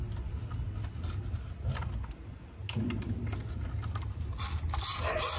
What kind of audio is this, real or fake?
real